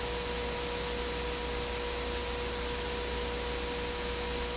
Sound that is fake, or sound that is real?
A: real